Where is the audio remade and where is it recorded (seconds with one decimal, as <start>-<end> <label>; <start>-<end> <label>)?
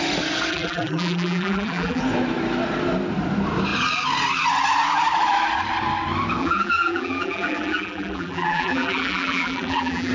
0.0-0.5 recorded; 0.5-2.0 remade; 2.0-6.4 recorded; 6.4-10.1 remade